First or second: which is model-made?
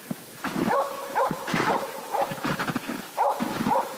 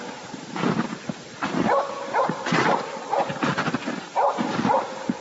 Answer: first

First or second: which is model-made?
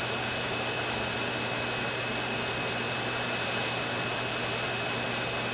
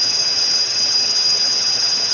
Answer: second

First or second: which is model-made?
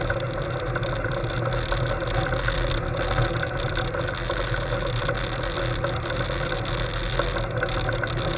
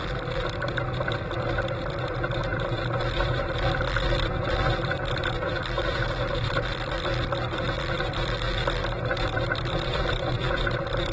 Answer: second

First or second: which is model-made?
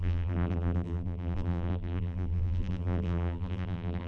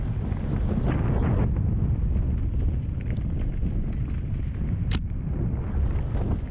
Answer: first